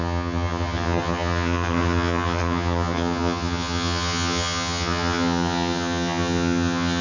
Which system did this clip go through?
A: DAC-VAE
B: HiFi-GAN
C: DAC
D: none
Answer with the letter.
B